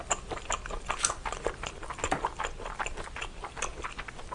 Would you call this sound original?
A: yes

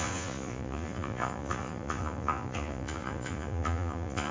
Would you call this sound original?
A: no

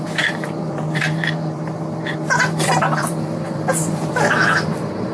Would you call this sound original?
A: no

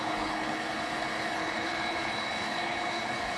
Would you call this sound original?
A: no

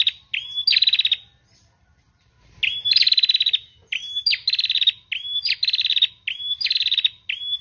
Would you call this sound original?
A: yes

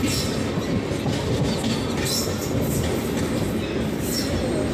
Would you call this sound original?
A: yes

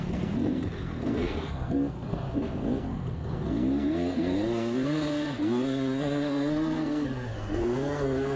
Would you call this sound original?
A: no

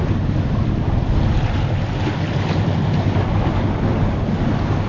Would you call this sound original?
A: yes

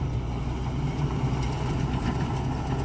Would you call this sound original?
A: yes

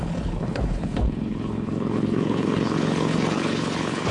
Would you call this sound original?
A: no